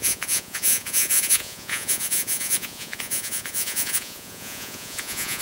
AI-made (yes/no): yes